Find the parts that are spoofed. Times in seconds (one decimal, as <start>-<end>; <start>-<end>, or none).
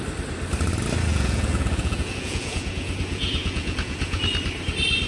1.1-4.2